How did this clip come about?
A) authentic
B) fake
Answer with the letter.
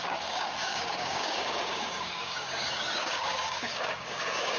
B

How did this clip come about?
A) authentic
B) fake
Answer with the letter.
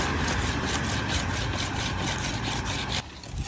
A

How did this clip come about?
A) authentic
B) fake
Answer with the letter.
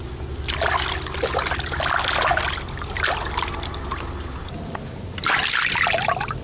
A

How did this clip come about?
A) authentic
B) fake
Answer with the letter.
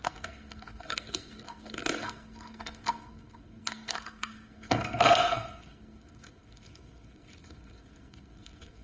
B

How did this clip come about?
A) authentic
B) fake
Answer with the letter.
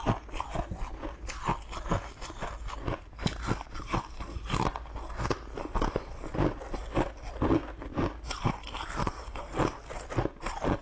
A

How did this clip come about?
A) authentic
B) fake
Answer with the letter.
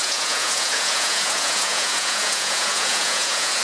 B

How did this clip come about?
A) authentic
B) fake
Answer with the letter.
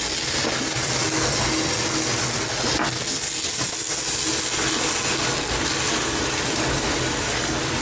A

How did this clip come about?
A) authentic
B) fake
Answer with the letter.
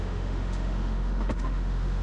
B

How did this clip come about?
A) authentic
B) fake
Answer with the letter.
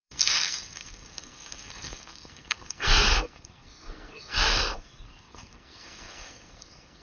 B